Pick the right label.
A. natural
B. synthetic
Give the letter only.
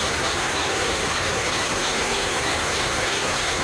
B